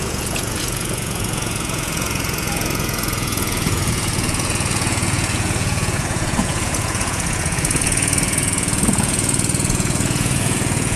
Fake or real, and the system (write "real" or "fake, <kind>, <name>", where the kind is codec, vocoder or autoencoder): fake, vocoder, Vocos